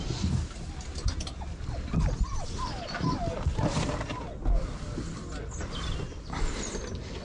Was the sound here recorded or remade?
recorded